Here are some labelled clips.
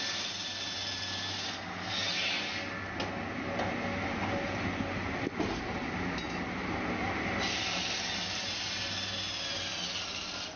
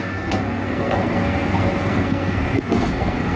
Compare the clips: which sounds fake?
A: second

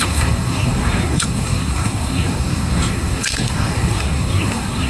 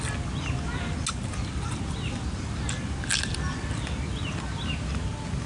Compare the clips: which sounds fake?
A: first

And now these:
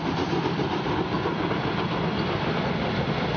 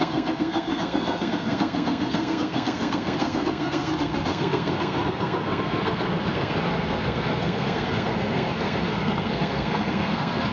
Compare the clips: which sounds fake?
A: second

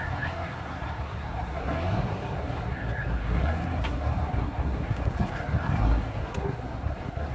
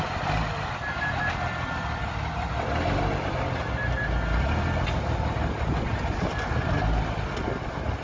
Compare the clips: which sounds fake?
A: first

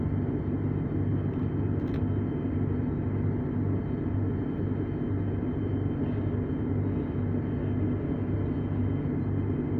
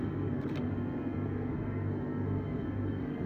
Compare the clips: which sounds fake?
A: second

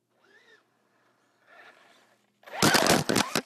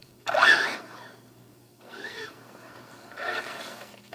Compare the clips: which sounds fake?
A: second